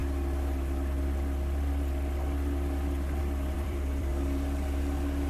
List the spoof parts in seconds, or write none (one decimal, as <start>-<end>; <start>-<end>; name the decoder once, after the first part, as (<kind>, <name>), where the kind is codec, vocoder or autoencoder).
3.2-4.1 (vocoder, BigVGAN v2)